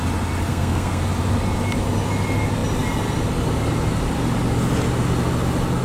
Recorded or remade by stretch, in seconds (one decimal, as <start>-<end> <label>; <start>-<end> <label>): 0.0-0.5 recorded; 0.5-1.0 remade; 1.0-5.8 recorded